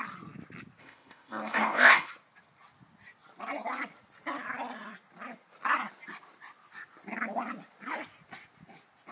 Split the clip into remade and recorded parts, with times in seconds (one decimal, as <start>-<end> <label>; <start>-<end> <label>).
0.0-0.8 recorded; 0.8-2.1 remade; 2.1-9.1 recorded